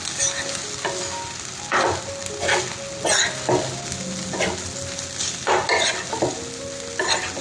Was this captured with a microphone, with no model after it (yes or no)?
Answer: yes